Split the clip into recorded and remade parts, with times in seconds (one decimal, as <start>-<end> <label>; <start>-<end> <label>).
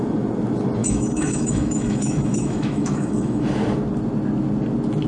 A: 0.0-0.8 recorded; 0.8-3.5 remade; 3.5-5.1 recorded